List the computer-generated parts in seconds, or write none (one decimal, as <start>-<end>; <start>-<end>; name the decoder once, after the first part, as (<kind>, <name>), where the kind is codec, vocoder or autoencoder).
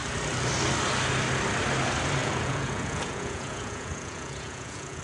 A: 2.2-5.0 (vocoder, Vocos)